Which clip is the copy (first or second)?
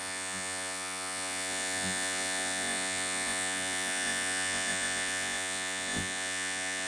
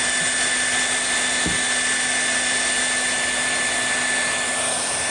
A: first